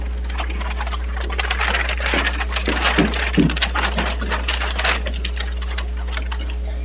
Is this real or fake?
real